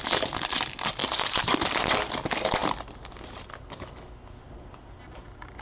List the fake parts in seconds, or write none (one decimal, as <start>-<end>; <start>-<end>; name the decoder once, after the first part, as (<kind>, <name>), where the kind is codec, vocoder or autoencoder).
1.0-1.8 (vocoder, BigVGAN v2)